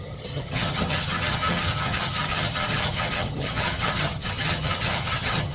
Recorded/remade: remade